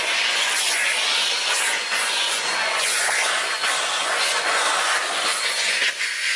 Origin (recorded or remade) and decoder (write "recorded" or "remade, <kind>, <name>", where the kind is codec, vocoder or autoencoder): remade, vocoder, Vocos